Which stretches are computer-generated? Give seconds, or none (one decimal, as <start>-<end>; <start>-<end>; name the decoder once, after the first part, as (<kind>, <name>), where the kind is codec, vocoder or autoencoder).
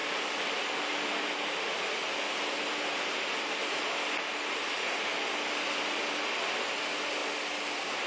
none